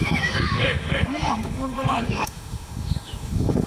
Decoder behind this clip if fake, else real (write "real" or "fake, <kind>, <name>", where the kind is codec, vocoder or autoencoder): fake, autoencoder, DAC-VAE